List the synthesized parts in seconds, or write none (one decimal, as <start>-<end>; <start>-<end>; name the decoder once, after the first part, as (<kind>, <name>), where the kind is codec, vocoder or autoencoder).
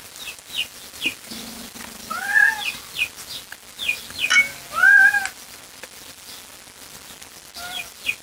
none